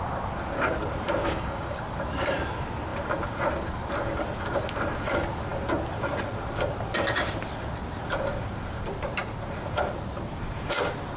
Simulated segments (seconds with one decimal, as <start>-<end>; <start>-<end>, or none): 1.2-1.8